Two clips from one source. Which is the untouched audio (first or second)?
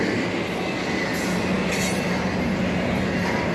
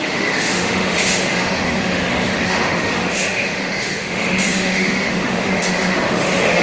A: first